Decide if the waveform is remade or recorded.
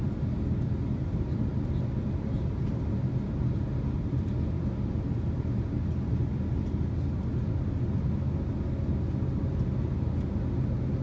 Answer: recorded